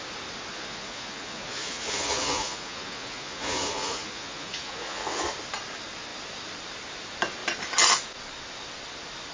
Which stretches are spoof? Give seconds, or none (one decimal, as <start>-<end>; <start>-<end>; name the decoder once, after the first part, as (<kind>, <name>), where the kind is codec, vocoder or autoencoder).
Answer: 0.5-5.2 (vocoder, Vocos)